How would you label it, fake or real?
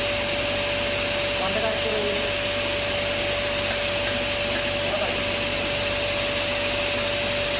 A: real